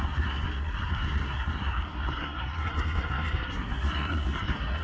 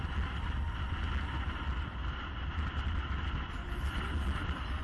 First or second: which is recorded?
second